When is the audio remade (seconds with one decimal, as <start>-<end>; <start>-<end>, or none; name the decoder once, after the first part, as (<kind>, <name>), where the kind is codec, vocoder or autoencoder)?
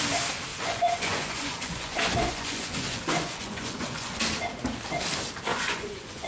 0.5-4.2 (vocoder, Vocos); 5.5-6.3